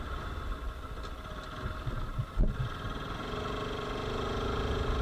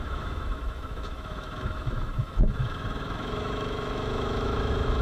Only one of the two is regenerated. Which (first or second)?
second